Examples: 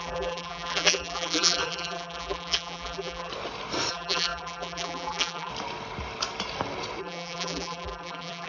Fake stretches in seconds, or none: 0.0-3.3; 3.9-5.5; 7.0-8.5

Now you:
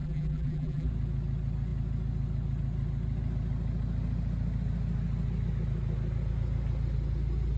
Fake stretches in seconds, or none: 0.0-0.9

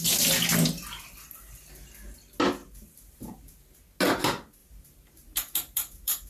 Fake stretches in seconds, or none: 2.6-3.8; 4.6-6.3

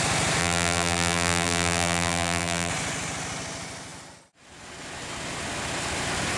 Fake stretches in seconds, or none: 0.4-2.7

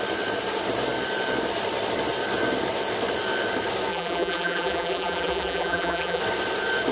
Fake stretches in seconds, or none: 3.9-6.2

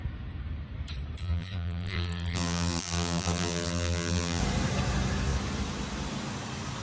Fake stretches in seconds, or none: 1.2-4.4

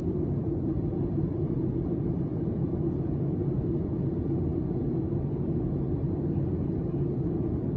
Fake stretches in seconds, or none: 2.3-3.6